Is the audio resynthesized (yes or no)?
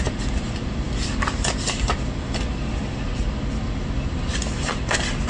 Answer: no